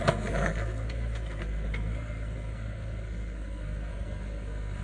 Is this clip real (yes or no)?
no